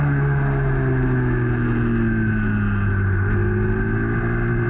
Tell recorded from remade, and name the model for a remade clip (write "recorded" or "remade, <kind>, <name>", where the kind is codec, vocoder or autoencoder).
recorded